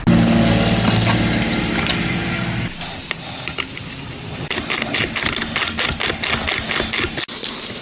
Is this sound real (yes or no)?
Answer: yes